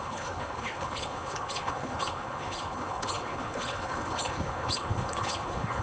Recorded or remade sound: remade